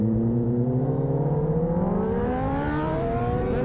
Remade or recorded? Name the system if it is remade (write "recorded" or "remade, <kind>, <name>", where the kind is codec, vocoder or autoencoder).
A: remade, vocoder, BigVGAN v2